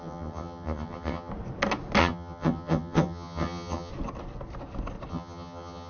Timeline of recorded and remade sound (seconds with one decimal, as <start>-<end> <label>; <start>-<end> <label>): 0.0-1.3 remade; 1.3-2.0 recorded; 2.0-3.9 remade; 3.9-5.1 recorded; 5.1-5.9 remade